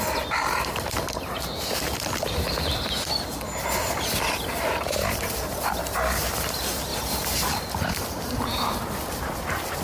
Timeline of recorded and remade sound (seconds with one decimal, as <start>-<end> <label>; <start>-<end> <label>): 0.0-9.8 recorded